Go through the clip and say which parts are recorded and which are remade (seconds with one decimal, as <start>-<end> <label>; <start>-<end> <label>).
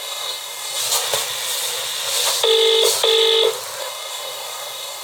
0.0-0.8 remade; 0.8-3.8 recorded; 3.8-5.0 remade